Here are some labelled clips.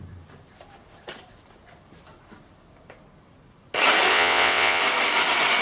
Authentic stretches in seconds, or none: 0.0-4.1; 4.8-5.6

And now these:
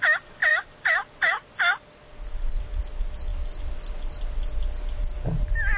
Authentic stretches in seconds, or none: 0.0-3.3; 4.1-5.8

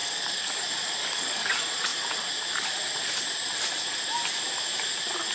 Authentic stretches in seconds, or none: 0.6-1.0; 1.5-5.3

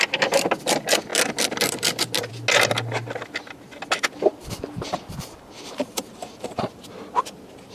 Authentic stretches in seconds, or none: 0.0-4.9; 6.7-7.7

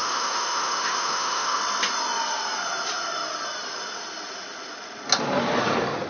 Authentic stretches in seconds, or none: 1.6-6.1

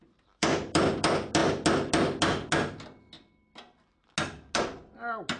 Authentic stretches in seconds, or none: 0.9-5.4